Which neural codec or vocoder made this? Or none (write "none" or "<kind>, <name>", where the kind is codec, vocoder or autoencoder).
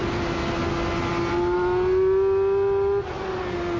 none